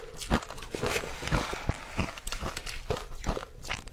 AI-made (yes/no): no